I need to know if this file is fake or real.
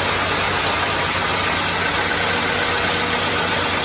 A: real